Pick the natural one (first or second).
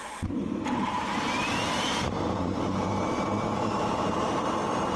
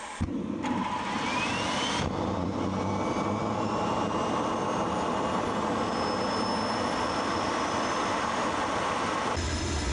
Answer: second